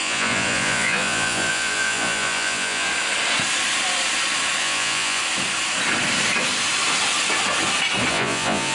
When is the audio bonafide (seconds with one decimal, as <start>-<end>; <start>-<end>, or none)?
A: 2.9-4.6; 5.2-8.1